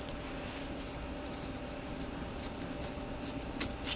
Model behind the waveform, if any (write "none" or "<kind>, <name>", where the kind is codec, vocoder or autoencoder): none